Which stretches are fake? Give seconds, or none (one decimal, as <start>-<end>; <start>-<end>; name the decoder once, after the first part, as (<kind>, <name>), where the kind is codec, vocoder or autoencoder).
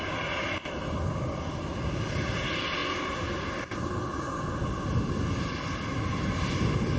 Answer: none